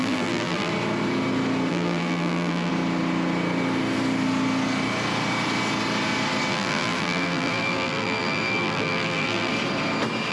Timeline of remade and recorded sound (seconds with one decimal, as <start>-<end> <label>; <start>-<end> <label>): 0.0-0.7 remade; 0.7-1.7 recorded; 1.7-2.7 remade; 2.7-6.5 recorded; 6.5-9.5 remade; 9.5-10.3 recorded